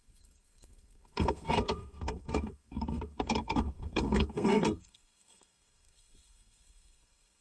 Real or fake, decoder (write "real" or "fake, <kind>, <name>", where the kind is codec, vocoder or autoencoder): fake, codec, SNAC